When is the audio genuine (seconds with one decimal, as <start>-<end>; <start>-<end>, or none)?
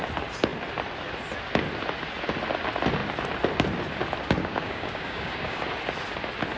0.0-4.4; 5.6-6.6